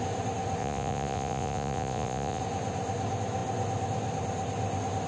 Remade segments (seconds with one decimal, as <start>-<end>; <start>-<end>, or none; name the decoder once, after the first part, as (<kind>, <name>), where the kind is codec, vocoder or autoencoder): 0.6-2.4 (vocoder, Vocos)